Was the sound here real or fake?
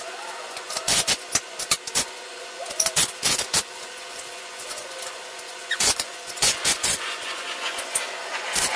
fake